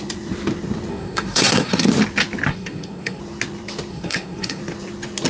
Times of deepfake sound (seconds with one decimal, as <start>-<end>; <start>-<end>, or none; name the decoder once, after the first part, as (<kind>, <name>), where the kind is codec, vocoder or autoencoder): 0.9-1.9 (codec, SNAC); 2.5-3.2; 3.9-4.6